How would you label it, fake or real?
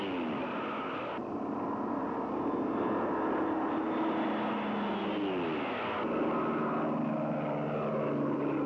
real